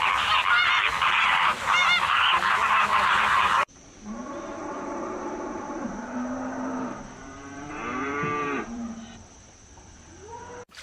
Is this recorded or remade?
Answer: remade